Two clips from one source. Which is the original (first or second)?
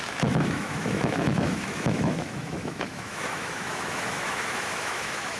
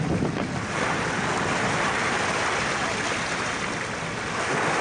second